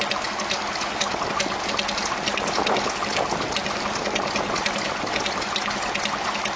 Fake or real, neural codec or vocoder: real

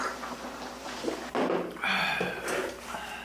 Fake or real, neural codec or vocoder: real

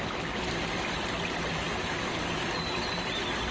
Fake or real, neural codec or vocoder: real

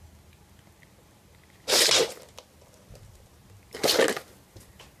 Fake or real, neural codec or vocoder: real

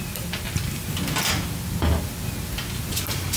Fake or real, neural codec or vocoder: real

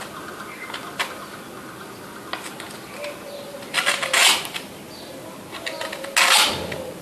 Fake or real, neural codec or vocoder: real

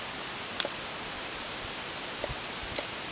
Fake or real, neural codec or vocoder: real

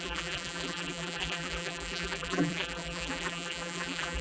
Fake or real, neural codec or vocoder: fake, vocoder, BigVGAN v2